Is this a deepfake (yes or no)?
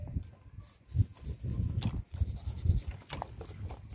no